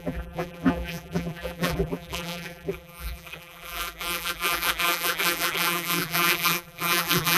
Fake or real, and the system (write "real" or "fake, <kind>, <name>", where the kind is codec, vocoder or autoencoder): fake, vocoder, BigVGAN v2